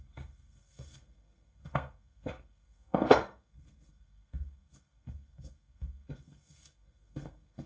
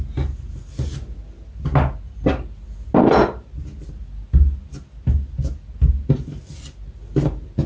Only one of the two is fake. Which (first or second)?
first